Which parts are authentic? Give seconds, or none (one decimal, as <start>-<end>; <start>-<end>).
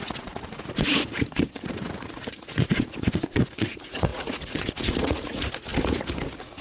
none